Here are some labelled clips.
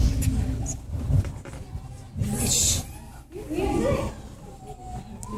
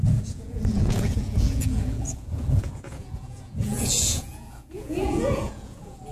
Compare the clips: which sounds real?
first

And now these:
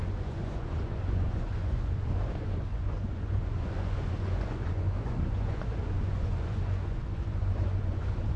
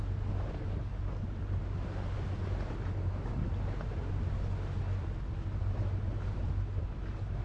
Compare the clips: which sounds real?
second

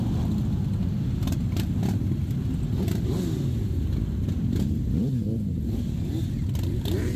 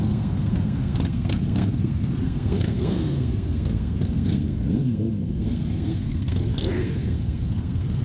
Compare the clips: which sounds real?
first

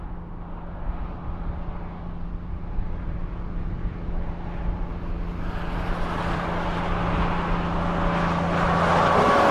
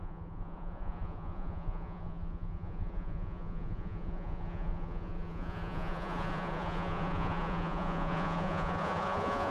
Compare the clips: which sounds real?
first